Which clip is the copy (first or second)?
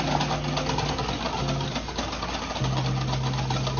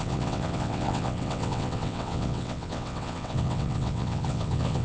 second